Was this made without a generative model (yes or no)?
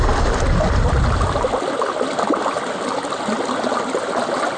yes